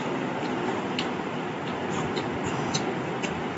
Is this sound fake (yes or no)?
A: no